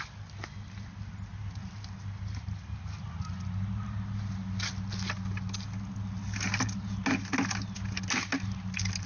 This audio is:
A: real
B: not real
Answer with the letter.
A